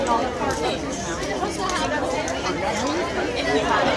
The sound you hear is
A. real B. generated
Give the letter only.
A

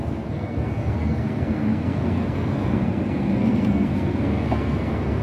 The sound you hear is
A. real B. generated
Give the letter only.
B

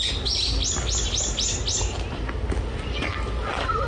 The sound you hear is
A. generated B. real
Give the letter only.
B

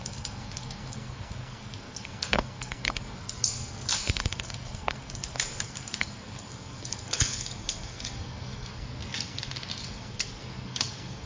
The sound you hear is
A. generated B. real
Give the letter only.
A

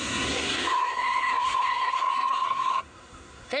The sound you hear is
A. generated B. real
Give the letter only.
A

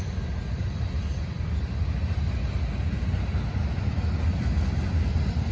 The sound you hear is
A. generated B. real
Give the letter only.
B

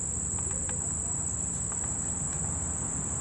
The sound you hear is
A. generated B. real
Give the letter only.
B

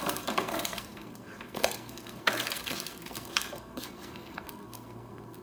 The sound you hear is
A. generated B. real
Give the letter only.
A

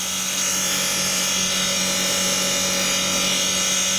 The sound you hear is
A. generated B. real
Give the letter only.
B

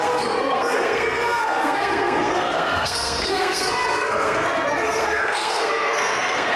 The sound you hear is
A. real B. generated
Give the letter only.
B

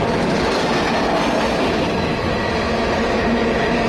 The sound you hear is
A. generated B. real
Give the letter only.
B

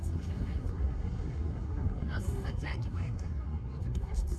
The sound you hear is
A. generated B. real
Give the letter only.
A